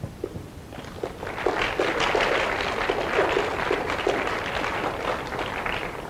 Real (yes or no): yes